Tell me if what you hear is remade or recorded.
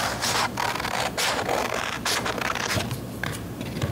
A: recorded